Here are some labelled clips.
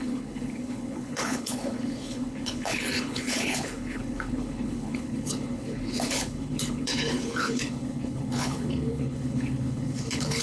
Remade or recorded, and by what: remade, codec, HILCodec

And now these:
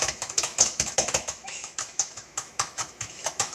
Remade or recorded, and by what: remade, autoencoder, DAC-VAE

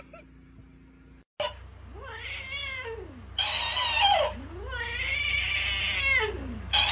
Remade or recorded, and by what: recorded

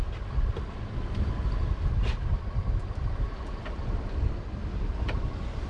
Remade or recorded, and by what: recorded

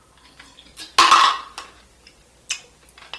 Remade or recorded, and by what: recorded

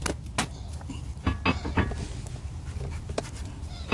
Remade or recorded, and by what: recorded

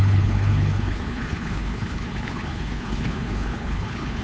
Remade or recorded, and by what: remade, codec, HILCodec